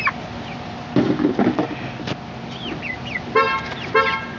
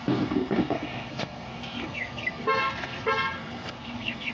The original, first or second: first